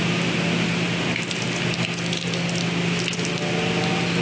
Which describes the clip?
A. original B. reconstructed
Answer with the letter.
A